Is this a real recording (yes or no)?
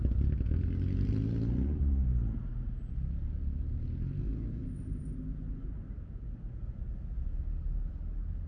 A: yes